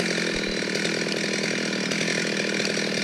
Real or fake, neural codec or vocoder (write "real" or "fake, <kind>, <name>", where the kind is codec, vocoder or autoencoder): real